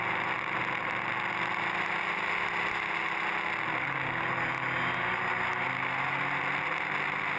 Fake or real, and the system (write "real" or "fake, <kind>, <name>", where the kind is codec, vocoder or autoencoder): real